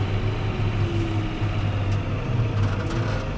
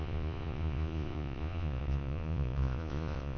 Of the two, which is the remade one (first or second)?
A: second